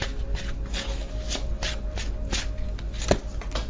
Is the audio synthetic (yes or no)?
no